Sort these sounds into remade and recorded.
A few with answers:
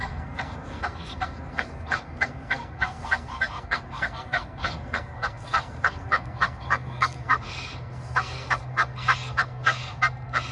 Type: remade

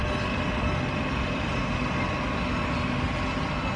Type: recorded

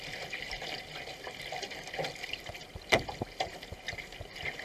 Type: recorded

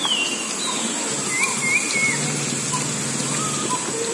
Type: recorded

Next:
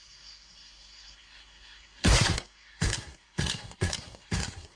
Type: remade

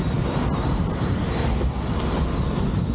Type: recorded